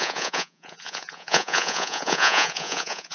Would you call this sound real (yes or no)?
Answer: no